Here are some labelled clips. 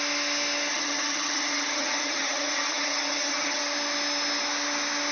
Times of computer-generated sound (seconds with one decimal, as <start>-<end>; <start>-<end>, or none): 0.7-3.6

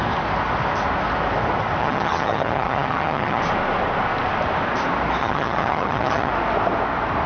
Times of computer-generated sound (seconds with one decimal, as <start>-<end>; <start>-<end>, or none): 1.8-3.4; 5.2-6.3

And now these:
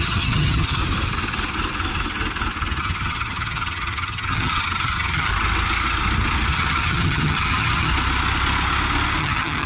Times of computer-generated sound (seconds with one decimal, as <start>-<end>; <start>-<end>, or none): 0.0-0.8; 2.8-5.3; 6.5-7.9; 9.2-9.7

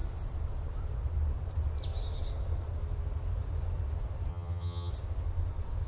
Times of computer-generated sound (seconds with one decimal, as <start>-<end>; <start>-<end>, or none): 4.3-4.9